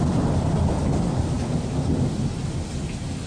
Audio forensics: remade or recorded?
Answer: recorded